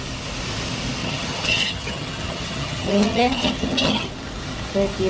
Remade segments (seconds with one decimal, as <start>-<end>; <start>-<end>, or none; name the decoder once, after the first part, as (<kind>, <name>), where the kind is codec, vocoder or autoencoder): 1.0-4.1 (vocoder, HiFi-GAN)

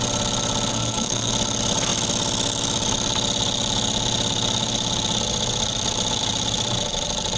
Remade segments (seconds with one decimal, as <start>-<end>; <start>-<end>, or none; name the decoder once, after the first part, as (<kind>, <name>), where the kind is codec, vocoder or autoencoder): 0.7-1.3 (codec, SNAC)

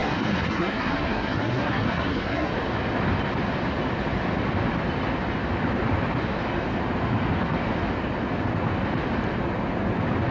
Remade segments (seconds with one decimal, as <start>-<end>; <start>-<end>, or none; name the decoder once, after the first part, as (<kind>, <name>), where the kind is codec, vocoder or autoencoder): 0.0-2.5 (codec, SNAC)

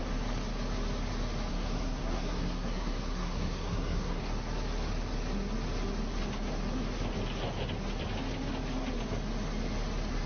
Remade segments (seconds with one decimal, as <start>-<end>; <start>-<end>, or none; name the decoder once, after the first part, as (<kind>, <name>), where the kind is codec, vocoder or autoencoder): 1.5-4.2 (codec, SNAC)